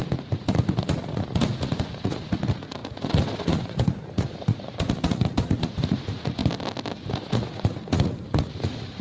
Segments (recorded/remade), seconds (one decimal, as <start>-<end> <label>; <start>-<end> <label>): 0.0-6.4 remade; 6.4-7.1 recorded; 7.1-9.0 remade